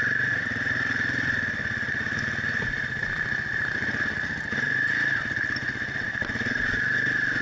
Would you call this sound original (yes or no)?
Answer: yes